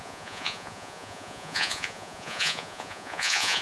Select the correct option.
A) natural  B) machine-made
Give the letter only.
B